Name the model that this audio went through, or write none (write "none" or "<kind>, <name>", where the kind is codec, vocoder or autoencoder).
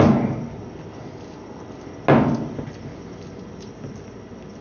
none